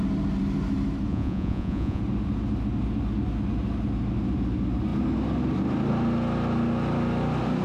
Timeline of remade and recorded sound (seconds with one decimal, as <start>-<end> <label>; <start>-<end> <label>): 0.0-1.1 recorded; 1.1-2.0 remade; 2.0-7.6 recorded